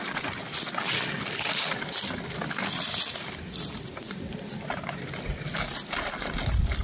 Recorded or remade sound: remade